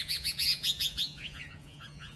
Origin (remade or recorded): remade